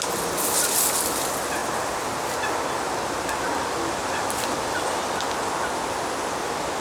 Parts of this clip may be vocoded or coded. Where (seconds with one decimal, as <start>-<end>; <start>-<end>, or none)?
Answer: 1.6-3.8